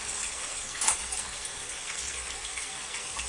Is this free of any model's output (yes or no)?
no